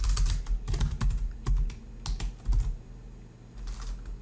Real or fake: real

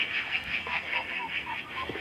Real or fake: fake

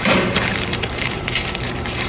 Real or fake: fake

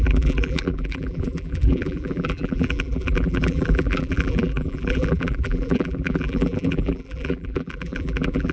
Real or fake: fake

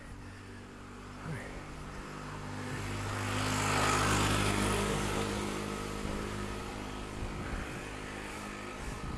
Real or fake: real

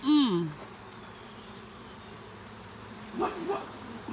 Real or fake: real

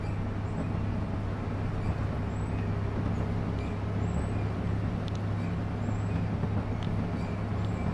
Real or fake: real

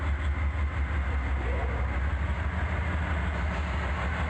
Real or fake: real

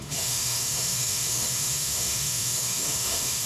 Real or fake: fake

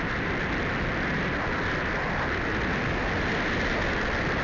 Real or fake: real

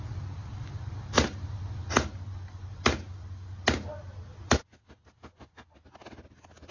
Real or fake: real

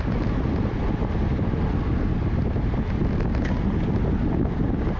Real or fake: real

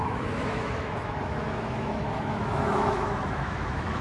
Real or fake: fake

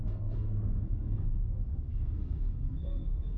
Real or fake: fake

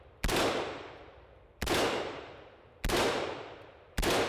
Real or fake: fake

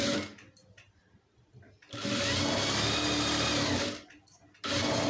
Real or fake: real